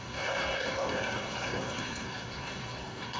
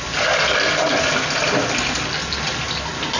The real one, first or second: second